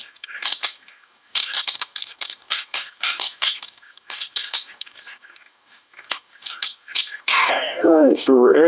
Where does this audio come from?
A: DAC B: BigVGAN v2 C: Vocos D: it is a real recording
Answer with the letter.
A